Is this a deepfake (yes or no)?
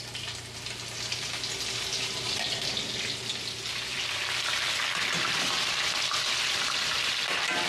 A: no